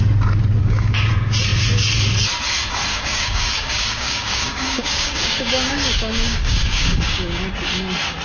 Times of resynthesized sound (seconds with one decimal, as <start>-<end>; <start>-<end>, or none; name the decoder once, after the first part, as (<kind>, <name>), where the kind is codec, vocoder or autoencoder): 0.6-1.1 (codec, DAC); 2.9-7.4